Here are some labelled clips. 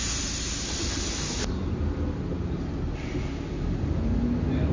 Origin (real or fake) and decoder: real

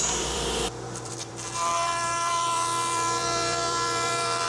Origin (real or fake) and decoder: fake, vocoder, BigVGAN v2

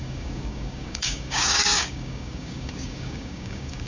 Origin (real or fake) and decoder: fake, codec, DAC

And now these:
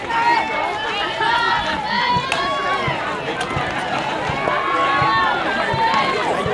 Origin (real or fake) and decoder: real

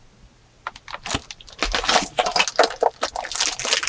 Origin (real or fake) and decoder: real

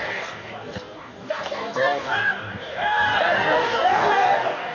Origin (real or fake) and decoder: fake, codec, DAC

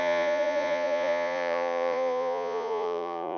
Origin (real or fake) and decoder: fake, vocoder, Vocos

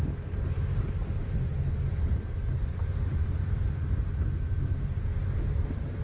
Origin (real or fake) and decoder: real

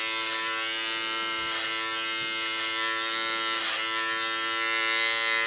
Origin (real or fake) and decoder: real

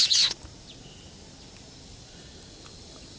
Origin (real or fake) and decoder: real